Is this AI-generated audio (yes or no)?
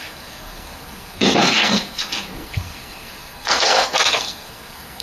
yes